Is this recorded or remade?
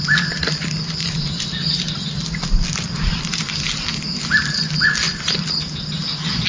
recorded